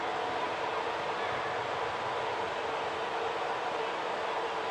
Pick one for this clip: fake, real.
real